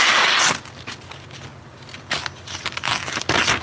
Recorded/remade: recorded